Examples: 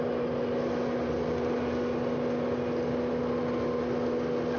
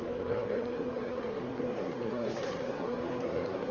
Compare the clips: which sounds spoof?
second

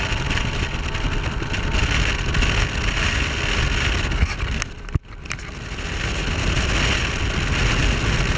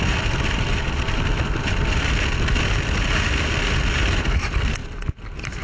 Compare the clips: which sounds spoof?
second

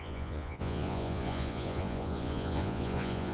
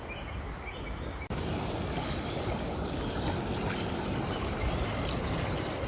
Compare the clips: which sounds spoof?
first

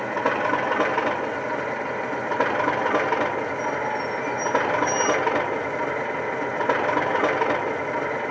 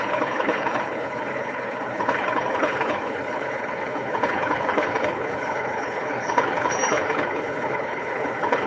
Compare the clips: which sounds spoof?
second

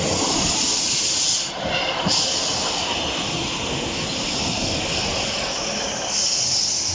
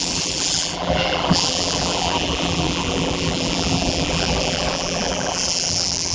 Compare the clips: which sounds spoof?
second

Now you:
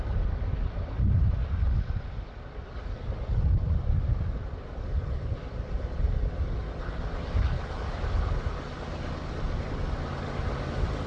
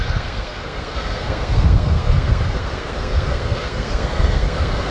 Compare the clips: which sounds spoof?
second